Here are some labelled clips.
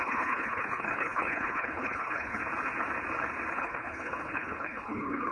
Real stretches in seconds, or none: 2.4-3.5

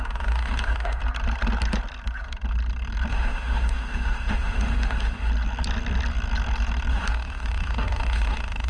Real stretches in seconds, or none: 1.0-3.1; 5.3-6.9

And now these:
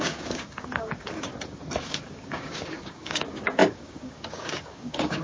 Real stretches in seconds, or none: 1.3-1.9